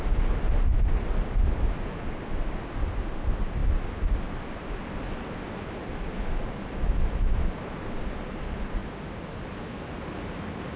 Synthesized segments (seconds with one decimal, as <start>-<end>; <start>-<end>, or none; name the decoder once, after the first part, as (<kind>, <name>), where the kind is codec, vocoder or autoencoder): none